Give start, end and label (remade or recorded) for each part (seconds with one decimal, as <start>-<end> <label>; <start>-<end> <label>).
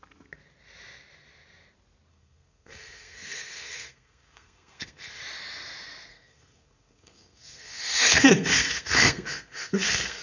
0.0-2.1 recorded; 2.1-5.2 remade; 5.2-6.1 recorded; 6.1-10.2 remade